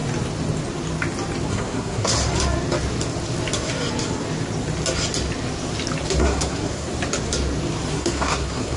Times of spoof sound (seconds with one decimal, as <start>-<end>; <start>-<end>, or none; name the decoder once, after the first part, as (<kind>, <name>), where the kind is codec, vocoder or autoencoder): 1.5-2.1 (codec, SNAC); 6.2-6.9; 7.9-8.8